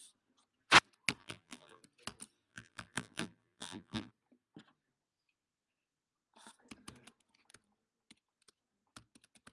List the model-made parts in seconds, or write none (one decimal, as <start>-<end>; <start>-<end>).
1.2-1.8; 2.5-4.1